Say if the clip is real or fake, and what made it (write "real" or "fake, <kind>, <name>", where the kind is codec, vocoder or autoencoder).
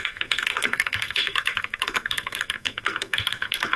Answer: fake, codec, SNAC